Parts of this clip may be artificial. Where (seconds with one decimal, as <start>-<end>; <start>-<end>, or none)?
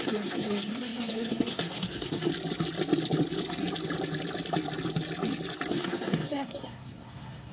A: 0.0-2.3; 5.7-7.5